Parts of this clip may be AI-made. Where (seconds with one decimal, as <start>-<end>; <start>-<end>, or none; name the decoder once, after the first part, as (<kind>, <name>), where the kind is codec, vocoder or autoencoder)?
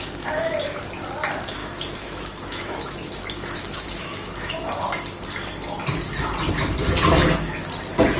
1.6-4.5 (autoencoder, DAC-VAE)